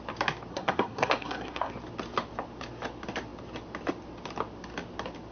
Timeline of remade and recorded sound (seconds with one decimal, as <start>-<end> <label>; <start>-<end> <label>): 0.0-0.5 recorded; 0.5-1.7 remade; 1.7-5.3 recorded